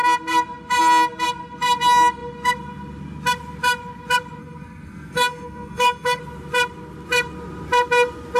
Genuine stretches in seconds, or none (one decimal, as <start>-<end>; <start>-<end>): 0.0-4.4; 6.2-8.4